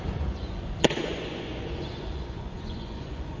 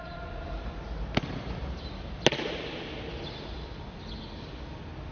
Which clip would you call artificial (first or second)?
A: first